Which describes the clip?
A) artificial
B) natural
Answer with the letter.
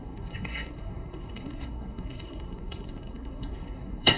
A